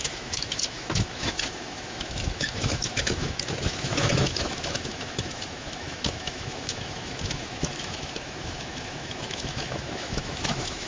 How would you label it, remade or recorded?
remade